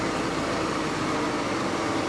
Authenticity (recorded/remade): recorded